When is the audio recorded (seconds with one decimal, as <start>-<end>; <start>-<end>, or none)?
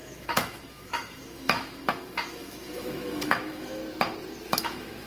3.8-4.5